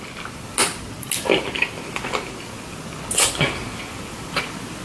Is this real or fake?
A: real